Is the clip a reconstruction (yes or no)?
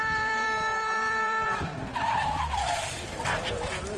yes